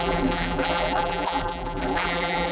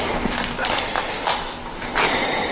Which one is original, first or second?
second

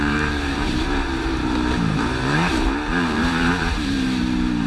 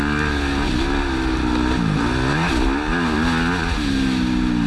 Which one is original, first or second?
second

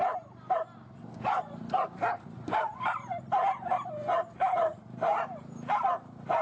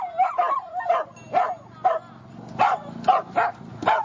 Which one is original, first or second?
second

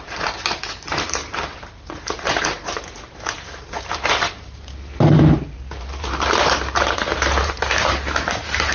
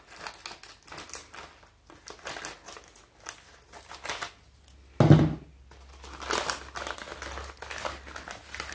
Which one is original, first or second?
second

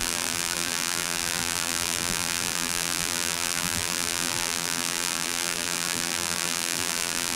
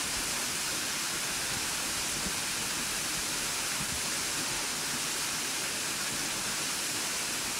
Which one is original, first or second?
second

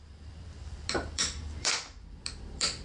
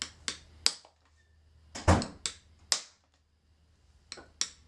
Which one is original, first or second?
second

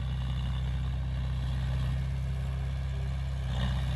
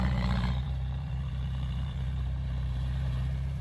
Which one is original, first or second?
first